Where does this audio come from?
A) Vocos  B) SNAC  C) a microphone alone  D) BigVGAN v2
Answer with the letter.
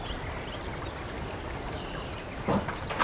C